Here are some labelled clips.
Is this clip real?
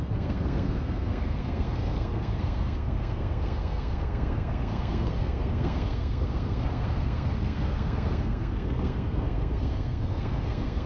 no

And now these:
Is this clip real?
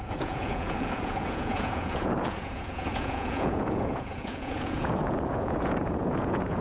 no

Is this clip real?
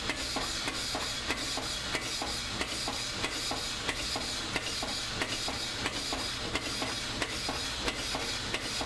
yes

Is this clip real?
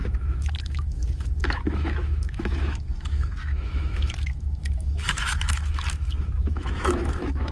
no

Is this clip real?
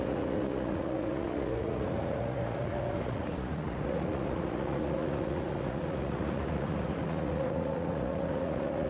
no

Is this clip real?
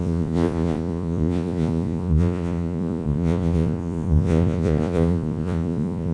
no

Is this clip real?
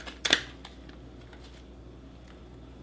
yes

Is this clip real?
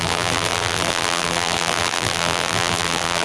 no